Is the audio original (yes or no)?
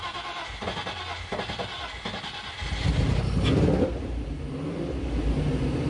yes